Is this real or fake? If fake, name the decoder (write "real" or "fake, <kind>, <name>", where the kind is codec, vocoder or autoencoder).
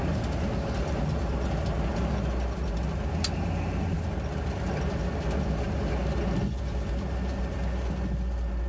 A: real